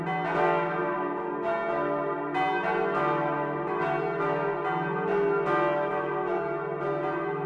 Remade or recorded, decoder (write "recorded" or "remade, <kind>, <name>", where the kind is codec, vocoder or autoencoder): recorded